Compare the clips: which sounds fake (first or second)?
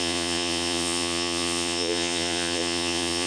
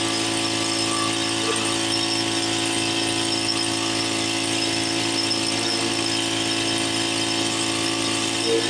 first